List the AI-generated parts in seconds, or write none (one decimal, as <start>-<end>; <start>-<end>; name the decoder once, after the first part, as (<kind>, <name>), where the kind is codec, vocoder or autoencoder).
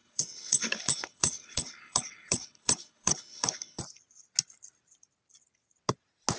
0.0-3.8 (codec, HILCodec)